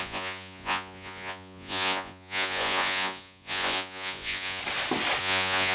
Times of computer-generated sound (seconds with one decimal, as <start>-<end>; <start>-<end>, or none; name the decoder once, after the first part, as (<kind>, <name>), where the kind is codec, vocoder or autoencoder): 0.0-4.6 (vocoder, Vocos); 5.2-5.7

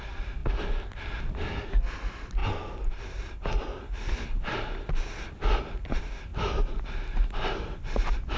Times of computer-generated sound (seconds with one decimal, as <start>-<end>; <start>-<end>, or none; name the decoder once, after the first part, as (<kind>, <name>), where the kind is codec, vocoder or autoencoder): none

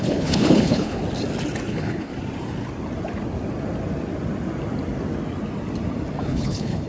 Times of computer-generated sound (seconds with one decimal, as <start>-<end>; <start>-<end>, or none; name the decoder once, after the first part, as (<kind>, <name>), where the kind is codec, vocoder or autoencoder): 0.0-1.0 (codec, HILCodec); 1.7-2.1; 6.2-6.9